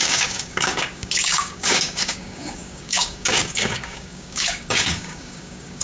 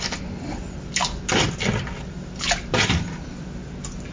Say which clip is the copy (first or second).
first